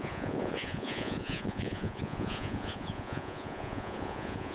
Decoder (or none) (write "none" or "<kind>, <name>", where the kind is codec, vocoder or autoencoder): vocoder, Vocos